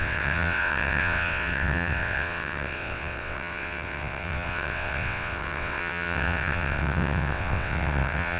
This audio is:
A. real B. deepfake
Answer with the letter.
B